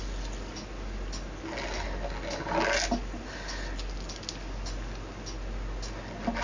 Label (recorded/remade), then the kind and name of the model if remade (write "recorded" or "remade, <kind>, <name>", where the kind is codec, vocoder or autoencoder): recorded